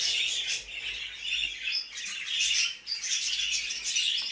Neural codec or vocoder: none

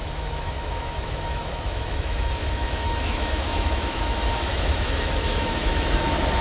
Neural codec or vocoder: autoencoder, DAC-VAE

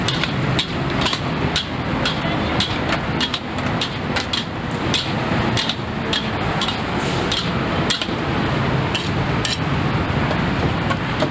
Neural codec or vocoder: none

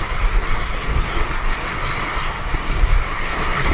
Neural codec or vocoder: codec, SNAC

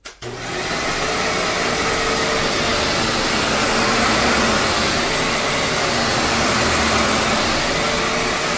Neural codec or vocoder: none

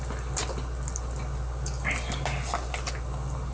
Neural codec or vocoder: none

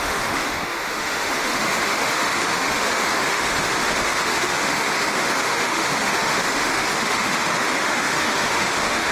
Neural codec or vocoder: autoencoder, DAC-VAE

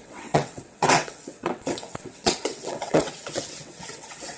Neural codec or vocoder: vocoder, WaveNeXt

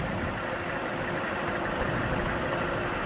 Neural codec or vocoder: none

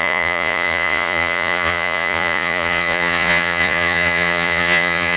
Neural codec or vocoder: vocoder, Vocos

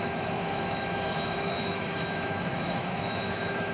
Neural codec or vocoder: autoencoder, DAC-VAE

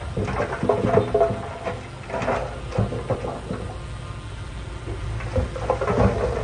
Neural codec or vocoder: none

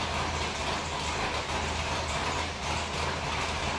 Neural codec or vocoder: none